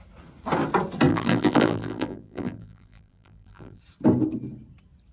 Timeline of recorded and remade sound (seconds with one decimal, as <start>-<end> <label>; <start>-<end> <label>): 0.0-1.1 recorded; 1.1-3.8 remade; 3.8-5.1 recorded